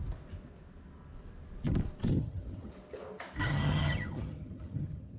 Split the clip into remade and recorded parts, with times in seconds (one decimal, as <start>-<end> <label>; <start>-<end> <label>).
0.0-2.1 recorded; 2.1-2.7 remade; 2.7-3.5 recorded; 3.5-5.2 remade